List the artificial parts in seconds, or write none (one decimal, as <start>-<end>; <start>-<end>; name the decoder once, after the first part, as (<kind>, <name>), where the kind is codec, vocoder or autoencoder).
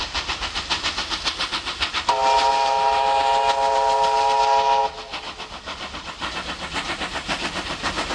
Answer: none